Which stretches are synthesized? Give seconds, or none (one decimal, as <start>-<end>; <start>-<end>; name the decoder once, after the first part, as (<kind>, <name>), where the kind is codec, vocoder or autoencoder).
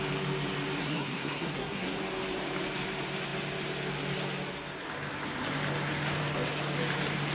0.8-2.0 (codec, SNAC)